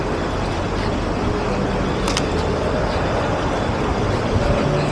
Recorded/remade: recorded